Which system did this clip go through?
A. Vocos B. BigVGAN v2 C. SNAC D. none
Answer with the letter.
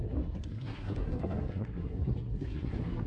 C